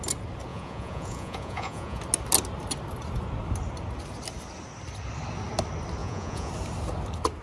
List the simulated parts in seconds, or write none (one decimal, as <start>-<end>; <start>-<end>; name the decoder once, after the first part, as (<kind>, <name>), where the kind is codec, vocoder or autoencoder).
0.5-2.0 (vocoder, Vocos); 6.0-6.5